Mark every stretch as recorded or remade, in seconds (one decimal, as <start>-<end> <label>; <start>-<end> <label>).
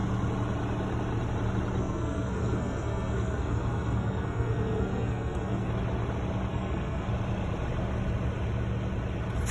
0.0-1.8 recorded; 1.8-5.7 remade; 5.7-6.5 recorded; 6.5-7.1 remade; 7.1-9.5 recorded